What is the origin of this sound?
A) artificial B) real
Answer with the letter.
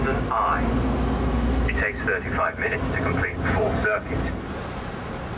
B